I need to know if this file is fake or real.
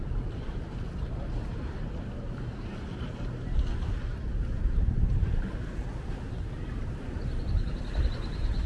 fake